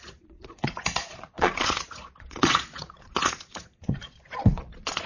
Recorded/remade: remade